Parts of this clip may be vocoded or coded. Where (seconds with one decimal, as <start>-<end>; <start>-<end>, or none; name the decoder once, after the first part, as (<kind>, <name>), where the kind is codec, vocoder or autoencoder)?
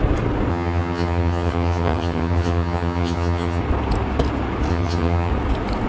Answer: 0.5-3.6 (vocoder, HiFi-GAN); 4.7-5.3